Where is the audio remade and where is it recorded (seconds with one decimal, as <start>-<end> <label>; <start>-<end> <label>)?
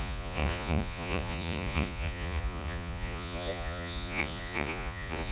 0.0-5.3 remade